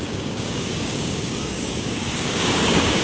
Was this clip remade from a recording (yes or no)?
yes